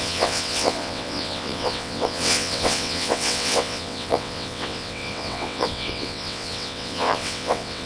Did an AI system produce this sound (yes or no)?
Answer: yes